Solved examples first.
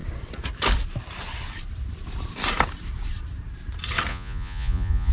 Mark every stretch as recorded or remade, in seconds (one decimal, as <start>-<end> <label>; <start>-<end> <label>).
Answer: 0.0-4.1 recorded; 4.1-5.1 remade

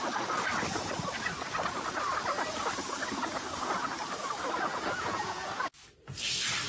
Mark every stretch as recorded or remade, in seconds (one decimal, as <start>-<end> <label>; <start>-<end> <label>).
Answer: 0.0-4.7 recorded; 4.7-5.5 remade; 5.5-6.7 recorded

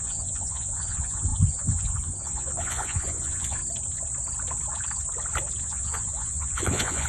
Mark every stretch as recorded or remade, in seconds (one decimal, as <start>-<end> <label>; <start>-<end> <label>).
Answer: 0.0-3.6 remade; 3.6-5.6 recorded; 5.6-7.1 remade

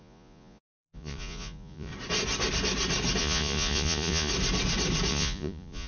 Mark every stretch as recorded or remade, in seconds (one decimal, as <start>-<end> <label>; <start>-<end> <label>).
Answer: 0.0-1.9 remade; 1.9-3.2 recorded; 3.2-4.3 remade; 4.3-5.1 recorded; 5.1-5.9 remade

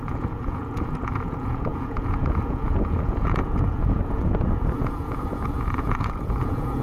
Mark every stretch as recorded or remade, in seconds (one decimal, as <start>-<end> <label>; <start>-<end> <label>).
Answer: 0.0-6.8 remade

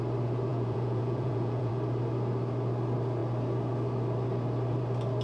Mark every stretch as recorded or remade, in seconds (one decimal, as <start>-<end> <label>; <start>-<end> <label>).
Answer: 0.0-0.5 recorded; 0.5-1.7 remade; 1.7-5.2 recorded